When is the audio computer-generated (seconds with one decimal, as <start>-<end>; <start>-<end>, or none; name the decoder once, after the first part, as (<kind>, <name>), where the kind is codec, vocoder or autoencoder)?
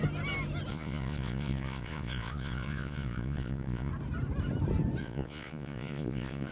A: 0.7-3.9 (vocoder, Vocos); 5.0-6.5